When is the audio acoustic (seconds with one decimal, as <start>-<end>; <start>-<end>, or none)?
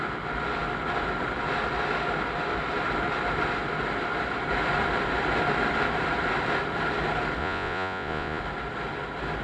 0.0-7.4; 8.4-9.4